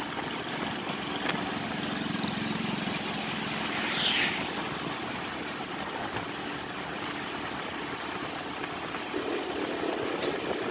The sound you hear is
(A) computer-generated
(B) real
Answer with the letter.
B